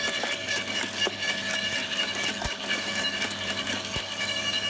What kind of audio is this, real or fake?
fake